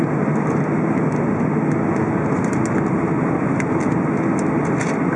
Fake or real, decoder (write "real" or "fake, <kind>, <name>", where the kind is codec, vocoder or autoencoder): real